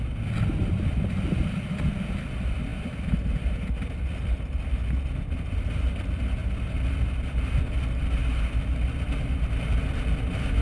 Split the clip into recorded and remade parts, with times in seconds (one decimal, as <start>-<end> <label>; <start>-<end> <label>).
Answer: 0.0-10.6 recorded

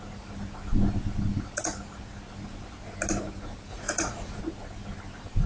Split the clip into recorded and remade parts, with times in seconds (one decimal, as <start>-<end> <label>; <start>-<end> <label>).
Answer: 0.0-3.7 recorded; 3.7-4.4 remade; 4.4-5.5 recorded

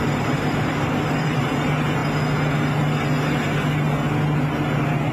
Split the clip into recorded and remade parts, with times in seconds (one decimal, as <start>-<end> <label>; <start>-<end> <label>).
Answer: 0.0-2.0 remade; 2.0-5.1 recorded

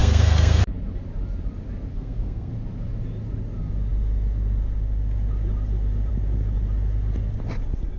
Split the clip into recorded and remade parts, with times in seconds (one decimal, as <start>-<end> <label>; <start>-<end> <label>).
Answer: 0.0-0.6 remade; 0.6-1.9 recorded; 1.9-2.5 remade; 2.5-8.0 recorded

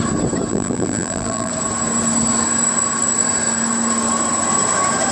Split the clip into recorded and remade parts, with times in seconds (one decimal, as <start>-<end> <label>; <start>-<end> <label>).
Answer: 0.0-0.5 recorded; 0.5-1.5 remade; 1.5-5.1 recorded

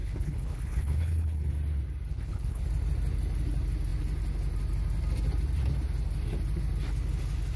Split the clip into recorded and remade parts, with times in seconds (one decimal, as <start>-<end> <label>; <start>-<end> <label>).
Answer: 0.0-1.5 remade; 1.5-2.1 recorded; 2.1-2.6 remade; 2.6-7.6 recorded

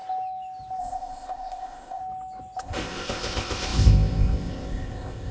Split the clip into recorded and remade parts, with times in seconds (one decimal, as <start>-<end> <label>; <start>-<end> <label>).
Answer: 0.0-0.8 recorded; 0.8-2.0 remade; 2.0-2.6 recorded; 2.6-5.3 remade

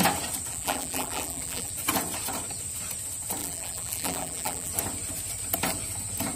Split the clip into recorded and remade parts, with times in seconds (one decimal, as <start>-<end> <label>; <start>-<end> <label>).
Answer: 0.0-0.5 recorded; 0.5-1.7 remade; 1.7-3.4 recorded; 3.4-4.7 remade; 4.7-6.4 recorded